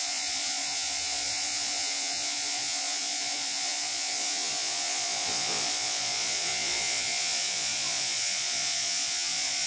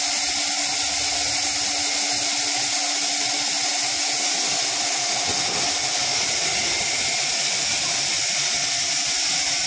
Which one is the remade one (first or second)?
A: first